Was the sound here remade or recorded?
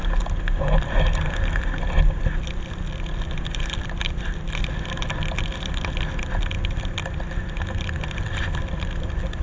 recorded